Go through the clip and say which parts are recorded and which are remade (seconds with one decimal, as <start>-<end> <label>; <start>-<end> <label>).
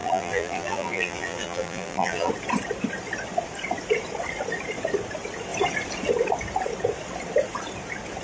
0.0-2.3 remade; 2.3-8.2 recorded